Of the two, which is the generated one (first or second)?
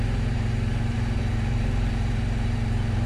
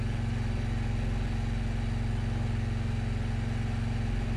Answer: first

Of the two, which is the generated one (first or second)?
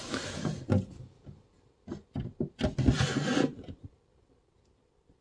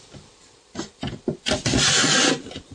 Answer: second